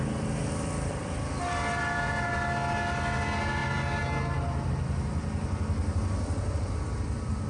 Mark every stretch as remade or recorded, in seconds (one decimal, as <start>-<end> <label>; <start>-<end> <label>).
0.0-7.5 recorded